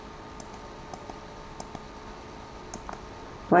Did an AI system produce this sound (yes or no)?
no